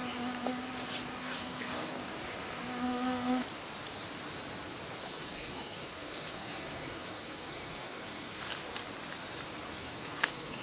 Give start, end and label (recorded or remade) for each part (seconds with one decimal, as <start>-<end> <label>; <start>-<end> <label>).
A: 0.0-1.2 recorded; 1.2-2.0 remade; 2.0-2.8 recorded; 2.8-3.4 remade; 3.4-5.0 recorded; 5.0-8.4 remade; 8.4-9.7 recorded; 9.7-10.6 remade